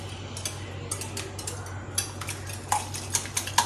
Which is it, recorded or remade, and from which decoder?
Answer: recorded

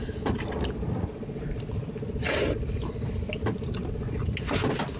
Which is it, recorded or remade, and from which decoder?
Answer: recorded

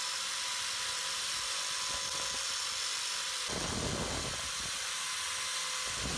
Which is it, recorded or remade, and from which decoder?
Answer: recorded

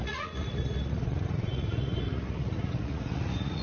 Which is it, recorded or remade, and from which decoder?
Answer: remade, vocoder, Vocos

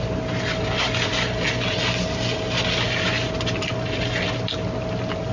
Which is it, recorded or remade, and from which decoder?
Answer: recorded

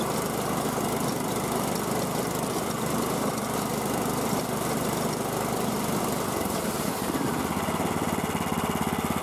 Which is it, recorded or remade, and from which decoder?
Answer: recorded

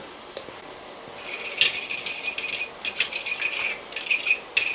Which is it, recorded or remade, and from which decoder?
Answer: recorded